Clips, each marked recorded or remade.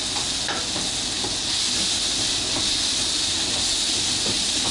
recorded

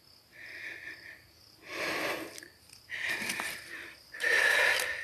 recorded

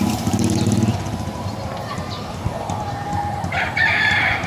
remade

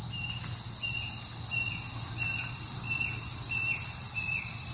recorded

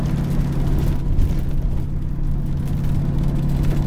recorded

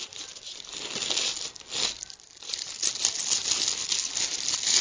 recorded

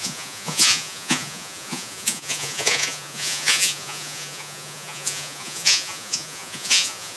remade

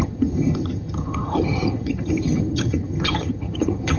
remade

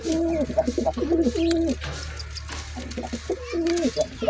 recorded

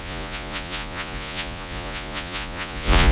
remade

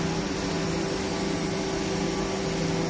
recorded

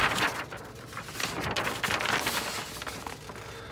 recorded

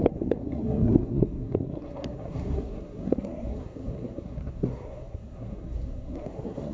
remade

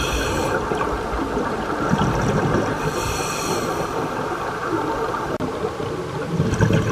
recorded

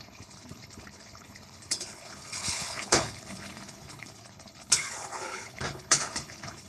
remade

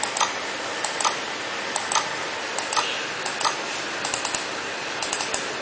recorded